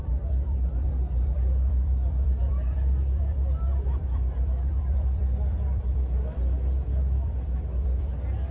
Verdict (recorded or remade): remade